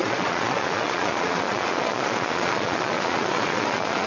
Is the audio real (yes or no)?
no